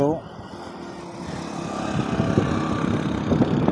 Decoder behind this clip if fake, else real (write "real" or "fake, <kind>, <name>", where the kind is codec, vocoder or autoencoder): real